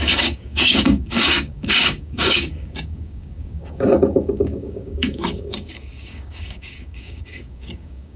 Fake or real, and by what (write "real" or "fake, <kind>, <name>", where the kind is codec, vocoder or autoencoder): fake, codec, DAC